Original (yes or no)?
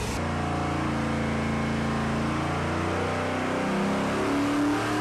yes